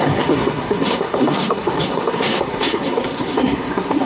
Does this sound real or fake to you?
fake